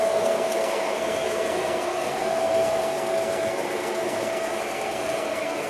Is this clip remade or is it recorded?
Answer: remade